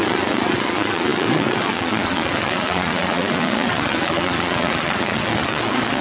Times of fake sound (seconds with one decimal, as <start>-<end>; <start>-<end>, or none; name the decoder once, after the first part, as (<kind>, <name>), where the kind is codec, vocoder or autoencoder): 0.0-6.0 (vocoder, Vocos)